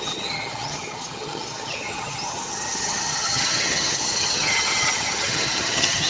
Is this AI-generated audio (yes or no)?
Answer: yes